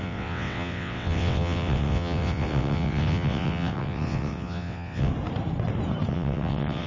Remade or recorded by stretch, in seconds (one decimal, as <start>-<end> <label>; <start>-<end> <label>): 0.0-5.1 remade; 5.1-6.1 recorded; 6.1-6.9 remade